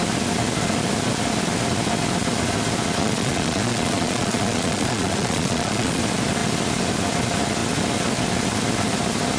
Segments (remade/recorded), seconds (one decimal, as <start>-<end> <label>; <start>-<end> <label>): 0.0-3.0 recorded; 3.0-6.0 remade; 6.0-9.4 recorded